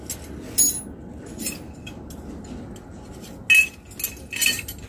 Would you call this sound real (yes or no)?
yes